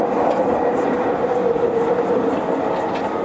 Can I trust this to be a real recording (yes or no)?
yes